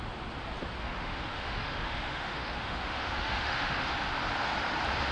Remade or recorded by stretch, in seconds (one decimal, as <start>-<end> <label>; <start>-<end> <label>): 0.0-0.8 recorded; 0.8-3.9 remade; 3.9-5.1 recorded